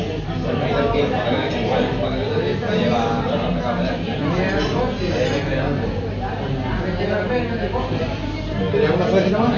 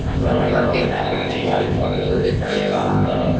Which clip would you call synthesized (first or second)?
second